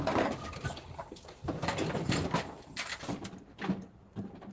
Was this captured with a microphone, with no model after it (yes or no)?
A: yes